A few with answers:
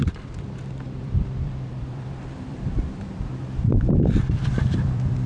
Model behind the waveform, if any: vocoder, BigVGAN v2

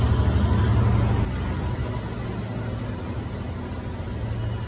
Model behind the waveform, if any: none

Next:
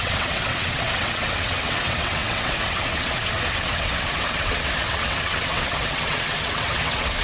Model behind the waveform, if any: vocoder, WaveNeXt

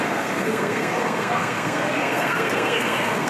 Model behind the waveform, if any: codec, SNAC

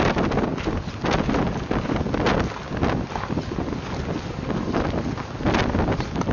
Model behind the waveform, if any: none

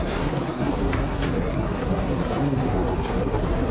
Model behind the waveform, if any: codec, SNAC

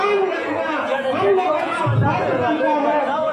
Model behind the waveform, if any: vocoder, Vocos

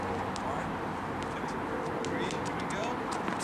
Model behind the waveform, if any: none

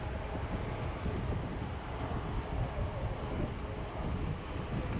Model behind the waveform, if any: none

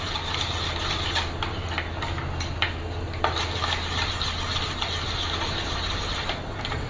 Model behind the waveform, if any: none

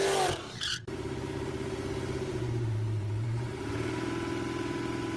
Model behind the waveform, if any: vocoder, BigVGAN v2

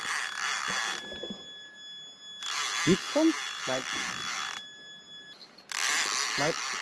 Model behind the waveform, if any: none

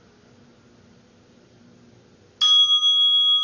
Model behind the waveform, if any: none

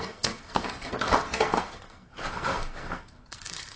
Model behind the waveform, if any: codec, SNAC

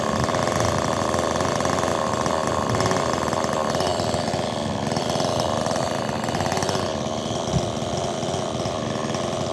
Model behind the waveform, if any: none